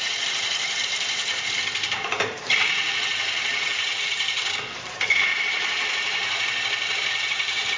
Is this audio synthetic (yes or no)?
yes